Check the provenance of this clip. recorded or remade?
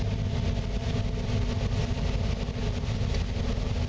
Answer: recorded